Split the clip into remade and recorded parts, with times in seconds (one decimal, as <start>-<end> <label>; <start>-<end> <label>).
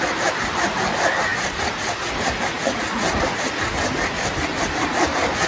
0.0-5.5 recorded